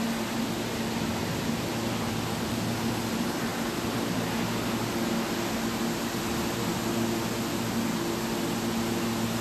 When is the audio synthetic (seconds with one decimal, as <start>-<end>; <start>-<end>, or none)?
none